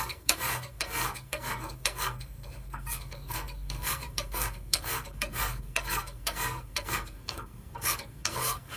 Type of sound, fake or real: fake